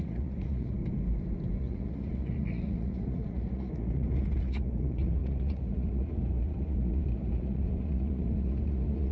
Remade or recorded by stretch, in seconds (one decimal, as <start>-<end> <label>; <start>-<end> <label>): 0.0-0.8 remade; 0.8-1.6 recorded; 1.6-9.1 remade